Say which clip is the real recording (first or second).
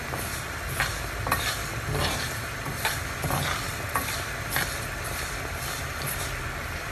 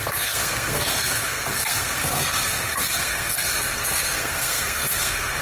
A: first